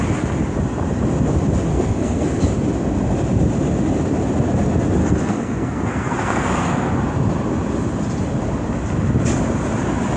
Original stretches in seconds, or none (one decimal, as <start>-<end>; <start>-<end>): 0.0-1.7; 2.4-5.0; 6.9-10.2